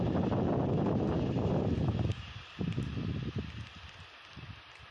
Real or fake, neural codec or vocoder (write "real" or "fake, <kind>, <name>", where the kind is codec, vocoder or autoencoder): real